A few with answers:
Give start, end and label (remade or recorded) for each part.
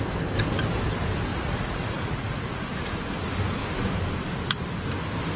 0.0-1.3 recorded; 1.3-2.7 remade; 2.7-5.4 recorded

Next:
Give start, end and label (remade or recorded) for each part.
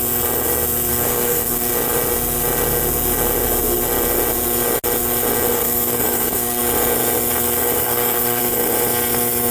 0.0-0.9 recorded; 0.9-1.7 remade; 1.7-5.5 recorded; 5.5-6.6 remade; 6.6-7.8 recorded; 7.8-8.4 remade; 8.4-9.5 recorded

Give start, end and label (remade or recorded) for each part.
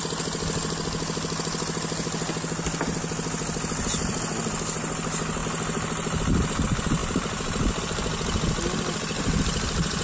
0.0-7.0 recorded; 7.0-7.8 remade; 7.8-10.0 recorded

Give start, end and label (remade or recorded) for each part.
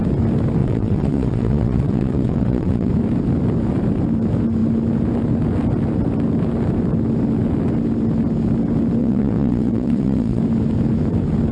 0.0-0.6 recorded; 0.6-2.9 remade; 2.9-9.0 recorded; 9.0-10.4 remade; 10.4-11.5 recorded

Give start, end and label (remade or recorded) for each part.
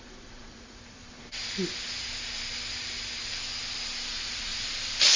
0.0-1.0 remade; 1.0-4.1 recorded; 4.1-4.5 remade; 4.5-5.2 recorded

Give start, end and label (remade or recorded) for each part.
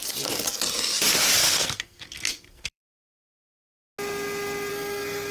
0.0-1.4 recorded; 1.4-3.7 remade; 3.7-4.7 recorded; 4.7-5.3 remade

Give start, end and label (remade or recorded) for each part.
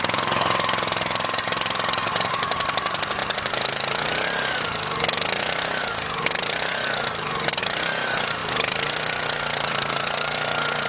0.0-10.9 remade